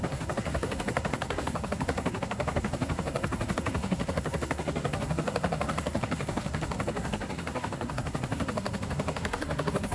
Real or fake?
fake